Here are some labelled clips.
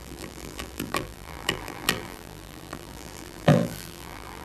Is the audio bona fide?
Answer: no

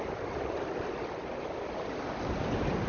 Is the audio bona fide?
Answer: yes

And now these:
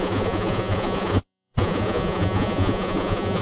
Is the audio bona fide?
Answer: no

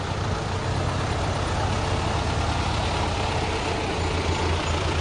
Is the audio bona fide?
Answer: yes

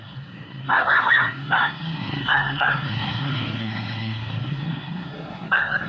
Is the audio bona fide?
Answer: no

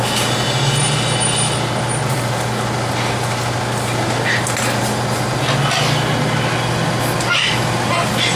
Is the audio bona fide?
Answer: yes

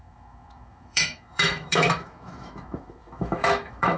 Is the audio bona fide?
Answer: no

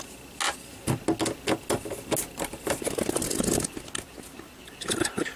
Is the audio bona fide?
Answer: yes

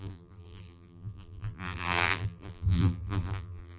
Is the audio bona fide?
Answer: no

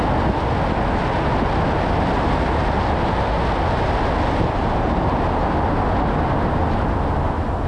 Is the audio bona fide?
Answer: yes